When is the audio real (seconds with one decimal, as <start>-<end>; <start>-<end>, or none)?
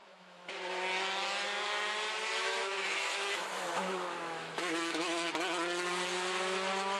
0.5-2.4; 5.3-7.0